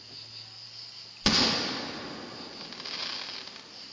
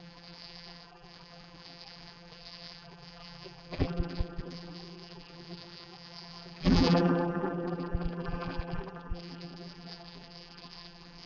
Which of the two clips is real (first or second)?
first